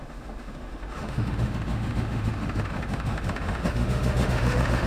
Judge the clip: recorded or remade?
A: remade